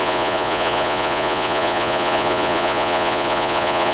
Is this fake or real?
fake